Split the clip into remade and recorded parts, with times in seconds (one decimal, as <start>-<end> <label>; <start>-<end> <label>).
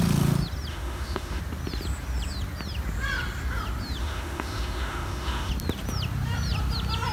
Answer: 0.0-0.7 recorded; 0.7-1.4 remade; 1.4-4.0 recorded; 4.0-5.5 remade; 5.5-7.1 recorded